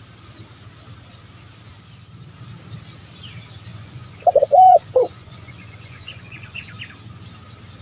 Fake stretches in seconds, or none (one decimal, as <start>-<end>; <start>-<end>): 3.7-6.8